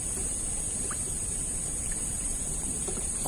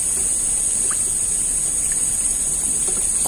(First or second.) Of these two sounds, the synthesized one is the first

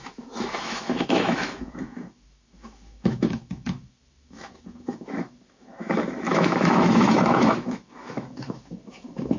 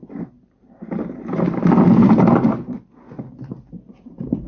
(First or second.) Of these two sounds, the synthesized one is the first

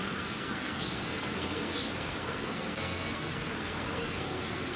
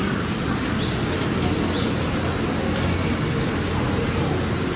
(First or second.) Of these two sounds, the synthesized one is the first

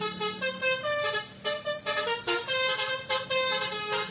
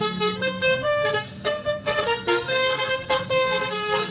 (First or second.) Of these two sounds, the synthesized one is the second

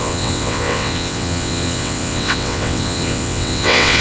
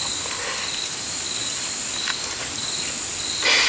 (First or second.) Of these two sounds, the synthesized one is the first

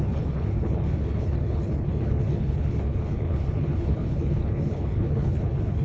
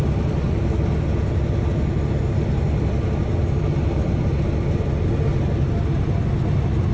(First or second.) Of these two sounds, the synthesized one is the first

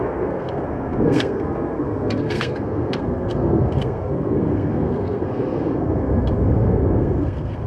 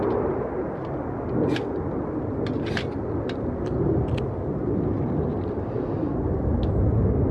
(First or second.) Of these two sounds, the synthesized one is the first